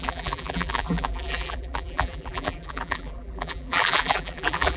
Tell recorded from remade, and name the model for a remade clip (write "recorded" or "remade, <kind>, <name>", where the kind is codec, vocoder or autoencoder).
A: remade, vocoder, BigVGAN v2